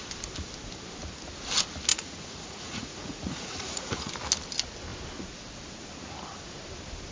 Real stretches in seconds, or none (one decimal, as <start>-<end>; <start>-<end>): 0.0-1.9; 4.1-7.1